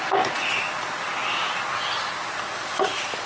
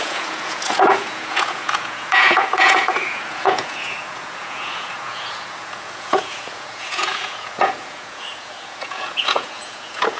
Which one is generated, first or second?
second